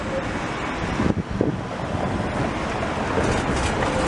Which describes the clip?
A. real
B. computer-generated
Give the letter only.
A